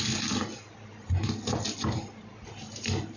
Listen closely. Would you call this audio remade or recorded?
remade